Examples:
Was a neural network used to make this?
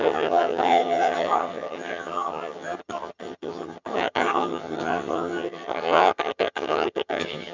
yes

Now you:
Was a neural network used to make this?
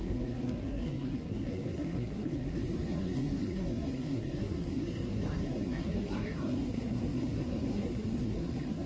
yes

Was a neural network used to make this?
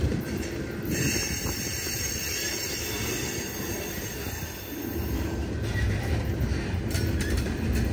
no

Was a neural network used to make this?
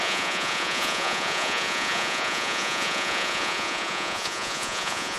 yes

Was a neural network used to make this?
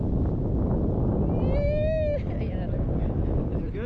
no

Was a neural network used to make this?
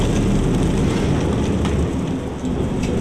no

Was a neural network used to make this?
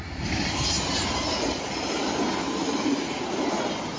no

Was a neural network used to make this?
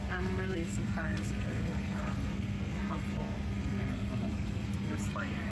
yes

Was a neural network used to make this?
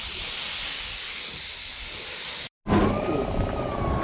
no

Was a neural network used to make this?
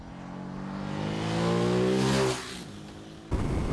no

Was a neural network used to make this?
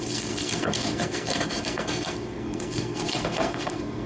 yes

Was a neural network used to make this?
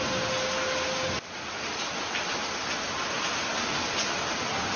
no